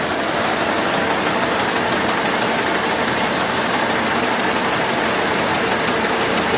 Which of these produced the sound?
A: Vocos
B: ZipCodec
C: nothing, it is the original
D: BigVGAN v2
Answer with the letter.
C